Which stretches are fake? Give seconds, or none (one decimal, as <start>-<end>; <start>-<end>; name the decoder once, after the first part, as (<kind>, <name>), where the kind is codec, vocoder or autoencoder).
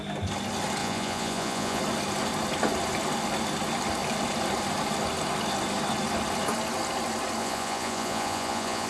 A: 0.8-1.8 (vocoder, Vocos); 7.4-8.9